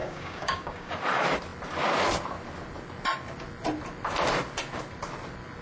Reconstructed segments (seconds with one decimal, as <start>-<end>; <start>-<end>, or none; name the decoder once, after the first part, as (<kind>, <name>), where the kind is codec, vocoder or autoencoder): 0.0-0.9 (codec, DAC)